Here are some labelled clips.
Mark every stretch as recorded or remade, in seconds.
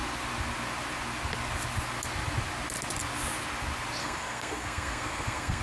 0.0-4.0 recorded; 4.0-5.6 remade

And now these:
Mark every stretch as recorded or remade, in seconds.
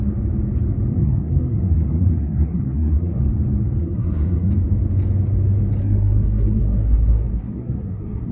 0.0-0.9 recorded; 0.9-3.2 remade; 3.2-3.8 recorded; 3.8-4.5 remade; 4.5-5.8 recorded; 5.8-8.3 remade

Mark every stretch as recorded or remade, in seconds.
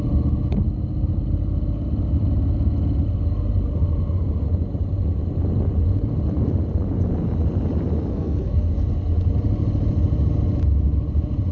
0.0-8.1 recorded; 8.1-8.7 remade; 8.7-11.5 recorded